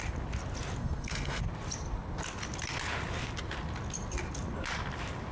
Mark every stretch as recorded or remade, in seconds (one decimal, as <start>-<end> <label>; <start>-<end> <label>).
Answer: 0.0-0.8 recorded; 0.8-1.4 remade; 1.4-5.3 recorded